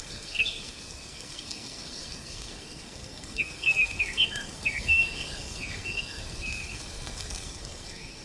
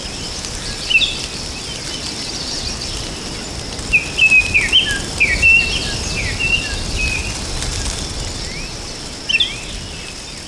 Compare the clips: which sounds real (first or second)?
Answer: second